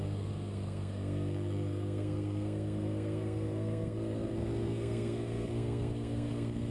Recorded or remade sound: remade